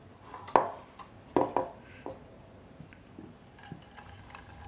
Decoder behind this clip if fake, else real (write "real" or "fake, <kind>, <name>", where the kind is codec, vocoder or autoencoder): real